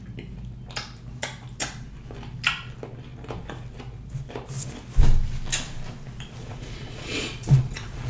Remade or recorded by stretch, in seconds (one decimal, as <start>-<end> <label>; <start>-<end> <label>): 0.0-6.4 recorded; 6.4-8.1 remade